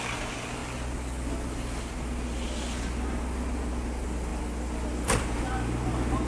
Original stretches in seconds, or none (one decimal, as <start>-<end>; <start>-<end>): 0.0-6.3